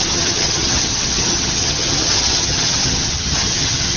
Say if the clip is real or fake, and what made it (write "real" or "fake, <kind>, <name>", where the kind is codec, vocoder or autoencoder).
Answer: fake, vocoder, HiFi-GAN